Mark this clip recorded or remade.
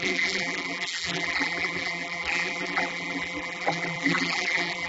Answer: remade